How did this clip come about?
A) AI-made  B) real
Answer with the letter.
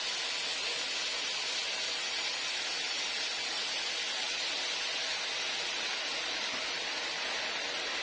B